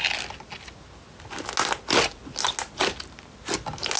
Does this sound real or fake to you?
real